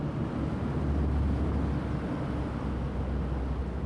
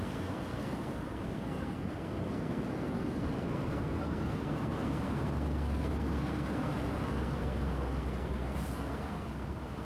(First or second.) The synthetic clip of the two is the second